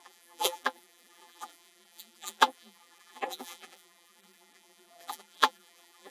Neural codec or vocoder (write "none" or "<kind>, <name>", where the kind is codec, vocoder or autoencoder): vocoder, BigVGAN v2